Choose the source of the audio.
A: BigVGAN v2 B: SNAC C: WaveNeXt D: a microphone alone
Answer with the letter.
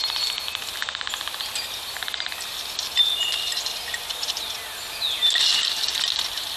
D